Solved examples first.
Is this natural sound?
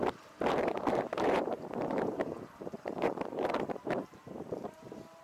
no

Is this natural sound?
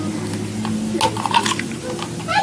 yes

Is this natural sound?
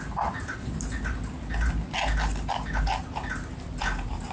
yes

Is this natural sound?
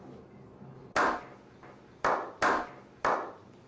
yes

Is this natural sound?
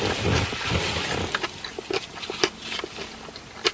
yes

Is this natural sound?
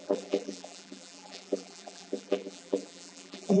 no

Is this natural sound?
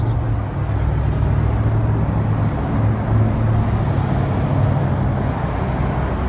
yes